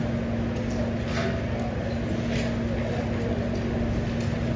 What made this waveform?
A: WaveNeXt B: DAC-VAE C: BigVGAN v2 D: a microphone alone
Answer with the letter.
D